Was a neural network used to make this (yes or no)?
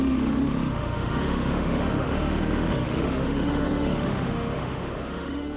yes